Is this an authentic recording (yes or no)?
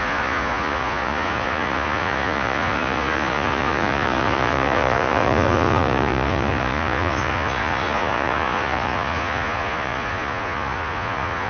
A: no